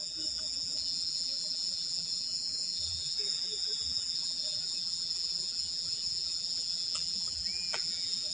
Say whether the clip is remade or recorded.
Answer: remade